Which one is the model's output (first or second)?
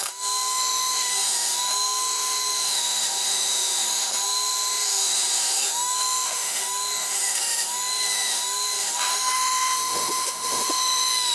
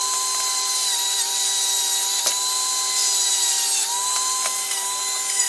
first